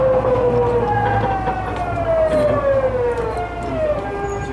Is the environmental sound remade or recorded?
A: recorded